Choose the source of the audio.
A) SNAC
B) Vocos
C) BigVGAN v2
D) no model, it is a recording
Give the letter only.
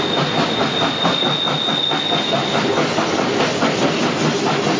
D